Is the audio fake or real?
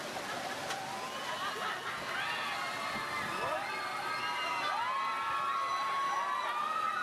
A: real